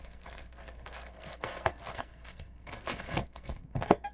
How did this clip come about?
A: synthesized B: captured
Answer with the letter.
A